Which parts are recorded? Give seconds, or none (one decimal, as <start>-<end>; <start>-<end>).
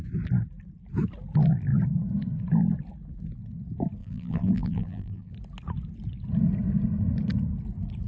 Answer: 0.0-4.0; 5.3-8.1